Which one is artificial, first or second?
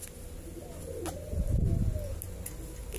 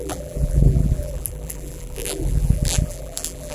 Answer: second